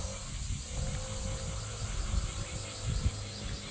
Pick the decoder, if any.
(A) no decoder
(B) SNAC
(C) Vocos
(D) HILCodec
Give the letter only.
A